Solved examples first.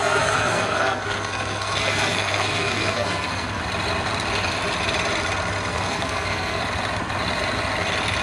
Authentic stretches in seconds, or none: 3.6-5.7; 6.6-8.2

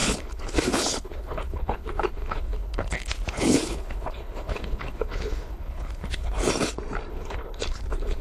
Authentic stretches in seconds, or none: 6.4-7.1

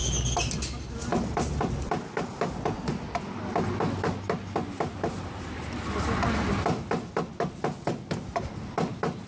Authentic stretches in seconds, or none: 0.0-9.3

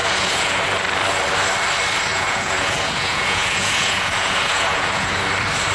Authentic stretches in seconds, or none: 0.6-2.1; 5.2-5.7

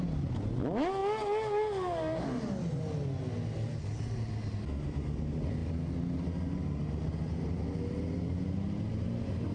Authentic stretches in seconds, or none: 0.0-9.5

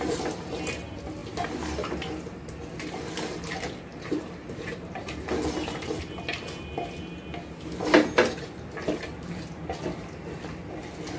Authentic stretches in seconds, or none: 0.0-3.9; 5.3-11.2